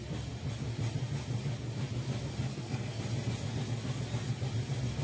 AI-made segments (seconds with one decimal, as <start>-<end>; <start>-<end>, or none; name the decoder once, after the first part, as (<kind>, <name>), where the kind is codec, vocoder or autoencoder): 2.5-3.0 (codec, SNAC)